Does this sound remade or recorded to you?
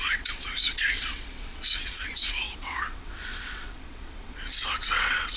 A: remade